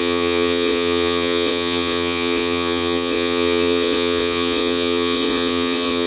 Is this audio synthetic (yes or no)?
yes